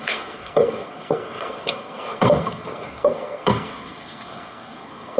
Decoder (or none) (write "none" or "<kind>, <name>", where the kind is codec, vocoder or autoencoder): codec, SNAC